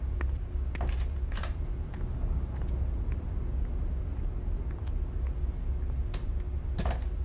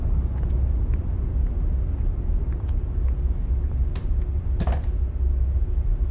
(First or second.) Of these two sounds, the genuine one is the first